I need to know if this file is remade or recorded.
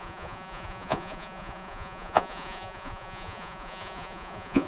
remade